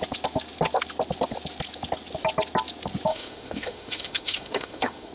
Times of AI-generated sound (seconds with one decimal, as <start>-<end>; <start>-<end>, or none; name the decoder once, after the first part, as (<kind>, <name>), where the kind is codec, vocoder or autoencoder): 3.1-5.1 (autoencoder, DAC-VAE)